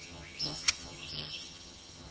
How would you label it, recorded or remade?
remade